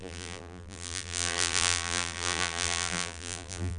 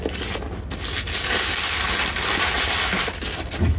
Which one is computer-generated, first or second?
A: first